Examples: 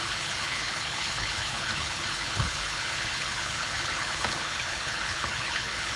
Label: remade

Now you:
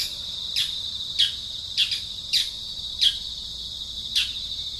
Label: recorded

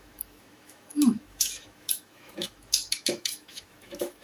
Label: remade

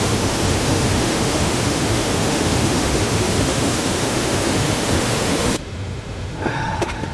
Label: remade